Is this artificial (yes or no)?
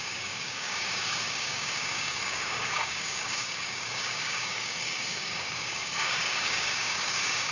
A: yes